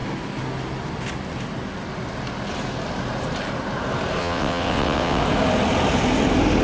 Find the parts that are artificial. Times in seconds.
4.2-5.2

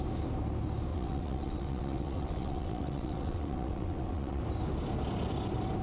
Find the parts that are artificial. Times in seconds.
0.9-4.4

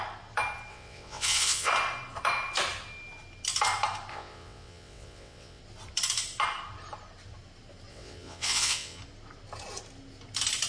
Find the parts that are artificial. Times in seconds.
0.7-1.7; 4.1-5.6; 7.9-9.0

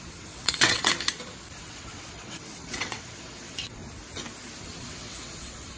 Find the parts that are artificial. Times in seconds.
0.0-0.9; 1.6-3.8; 4.8-5.8

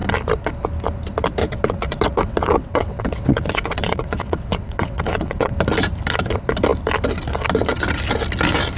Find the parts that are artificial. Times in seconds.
1.4-5.5

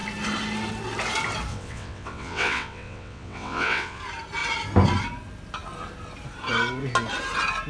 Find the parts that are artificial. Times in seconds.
1.5-4.0